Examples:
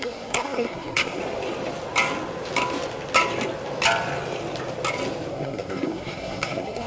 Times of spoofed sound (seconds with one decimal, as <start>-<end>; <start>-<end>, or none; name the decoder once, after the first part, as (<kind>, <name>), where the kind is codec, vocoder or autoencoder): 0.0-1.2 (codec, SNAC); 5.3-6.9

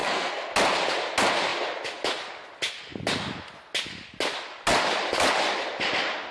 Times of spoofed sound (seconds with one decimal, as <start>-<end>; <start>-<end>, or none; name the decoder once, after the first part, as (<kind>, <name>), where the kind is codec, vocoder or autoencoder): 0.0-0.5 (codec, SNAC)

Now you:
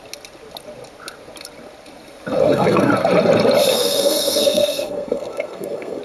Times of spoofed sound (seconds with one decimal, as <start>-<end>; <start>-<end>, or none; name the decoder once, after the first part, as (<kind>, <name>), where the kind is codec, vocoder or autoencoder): 2.4-2.9 (codec, SNAC); 3.7-6.0

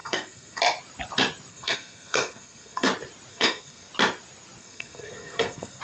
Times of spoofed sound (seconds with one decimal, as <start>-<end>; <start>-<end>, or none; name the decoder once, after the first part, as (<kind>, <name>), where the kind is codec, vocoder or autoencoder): 0.0-0.6 (codec, SNAC); 1.5-2.9; 3.3-3.9; 4.6-5.8

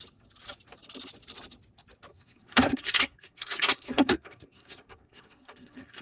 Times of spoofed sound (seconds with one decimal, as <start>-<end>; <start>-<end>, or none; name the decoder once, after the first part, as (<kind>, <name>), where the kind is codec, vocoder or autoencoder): 2.1-6.0 (codec, SNAC)

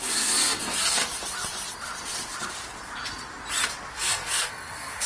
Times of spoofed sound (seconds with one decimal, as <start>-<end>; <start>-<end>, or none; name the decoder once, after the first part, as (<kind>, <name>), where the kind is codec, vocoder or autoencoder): 0.0-1.0 (codec, SNAC); 3.9-5.1

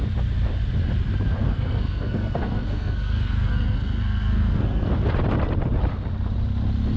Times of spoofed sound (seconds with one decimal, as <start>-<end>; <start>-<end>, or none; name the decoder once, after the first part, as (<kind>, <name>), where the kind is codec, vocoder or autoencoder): 1.4-4.9 (codec, SNAC)

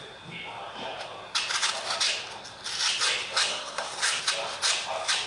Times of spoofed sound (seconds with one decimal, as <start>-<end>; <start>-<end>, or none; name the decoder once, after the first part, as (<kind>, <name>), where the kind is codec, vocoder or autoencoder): 3.5-4.2 (codec, SNAC)